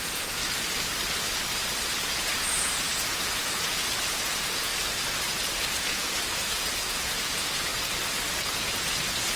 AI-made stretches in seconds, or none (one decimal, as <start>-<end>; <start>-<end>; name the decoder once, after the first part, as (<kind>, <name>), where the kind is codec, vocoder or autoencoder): 0.0-0.4 (vocoder, Vocos); 2.0-4.7; 5.3-7.7; 8.5-9.4